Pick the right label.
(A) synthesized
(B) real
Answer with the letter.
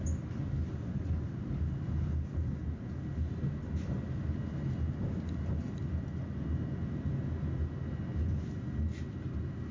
B